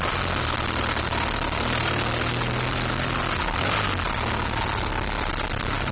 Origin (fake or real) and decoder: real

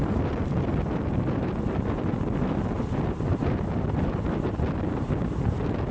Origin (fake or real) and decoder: real